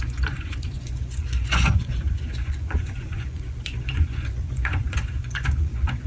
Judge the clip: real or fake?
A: fake